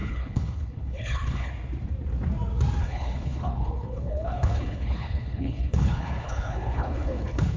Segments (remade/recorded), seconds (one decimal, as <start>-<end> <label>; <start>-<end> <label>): 0.0-1.5 remade; 1.5-2.8 recorded; 2.8-7.6 remade